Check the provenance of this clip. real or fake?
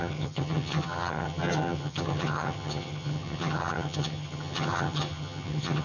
fake